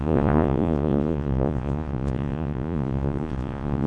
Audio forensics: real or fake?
fake